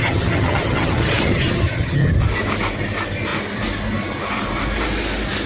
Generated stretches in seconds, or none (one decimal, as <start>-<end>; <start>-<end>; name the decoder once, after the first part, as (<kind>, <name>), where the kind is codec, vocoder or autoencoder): 0.0-2.1 (vocoder, HiFi-GAN)